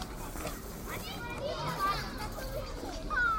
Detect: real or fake fake